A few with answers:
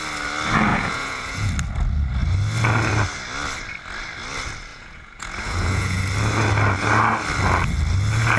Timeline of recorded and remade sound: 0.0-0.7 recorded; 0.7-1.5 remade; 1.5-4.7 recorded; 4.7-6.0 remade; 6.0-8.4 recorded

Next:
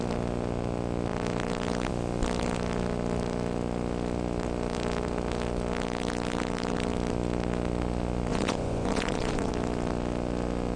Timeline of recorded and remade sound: 0.0-8.3 recorded; 8.3-9.5 remade; 9.5-10.8 recorded

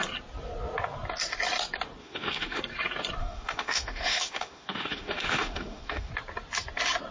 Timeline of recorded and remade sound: 0.0-2.0 recorded; 2.0-2.6 remade; 2.6-3.2 recorded; 3.2-6.1 remade; 6.1-7.1 recorded

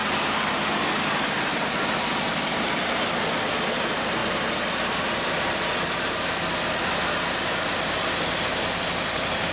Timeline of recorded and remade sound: 0.0-9.5 recorded

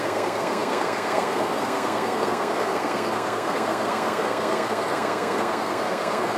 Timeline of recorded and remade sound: 0.0-6.4 remade

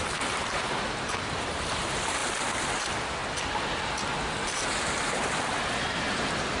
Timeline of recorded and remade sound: 0.0-2.2 remade; 2.2-2.7 recorded; 2.7-3.2 remade; 3.2-4.6 recorded; 4.6-6.6 remade

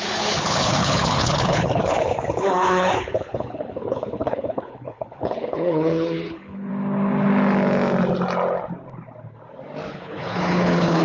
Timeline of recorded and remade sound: 0.0-6.7 remade; 6.7-9.9 recorded; 9.9-11.0 remade

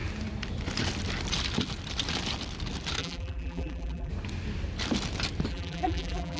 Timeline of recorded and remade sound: 0.0-3.0 recorded; 3.0-4.1 remade; 4.1-5.5 recorded; 5.5-6.4 remade